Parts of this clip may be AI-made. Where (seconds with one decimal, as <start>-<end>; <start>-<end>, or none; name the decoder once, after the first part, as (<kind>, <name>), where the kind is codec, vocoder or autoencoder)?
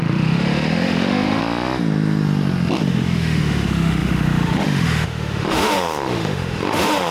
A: 0.0-1.4 (autoencoder, DAC-VAE); 2.8-7.1